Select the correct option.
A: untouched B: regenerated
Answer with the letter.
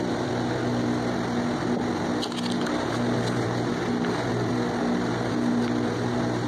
A